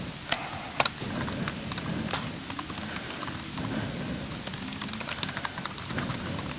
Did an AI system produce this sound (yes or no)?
no